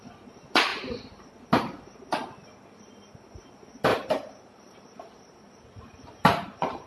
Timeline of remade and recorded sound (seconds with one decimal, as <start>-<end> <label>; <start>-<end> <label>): 0.0-3.9 recorded; 3.9-6.9 remade